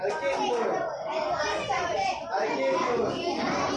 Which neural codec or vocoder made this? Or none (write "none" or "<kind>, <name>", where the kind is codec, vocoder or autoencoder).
none